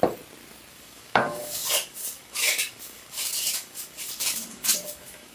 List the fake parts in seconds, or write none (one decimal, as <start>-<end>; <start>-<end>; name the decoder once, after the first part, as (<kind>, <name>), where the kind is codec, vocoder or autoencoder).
0.7-5.3 (codec, DAC)